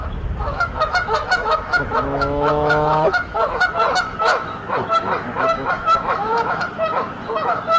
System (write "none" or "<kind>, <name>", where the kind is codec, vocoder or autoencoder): autoencoder, DAC-VAE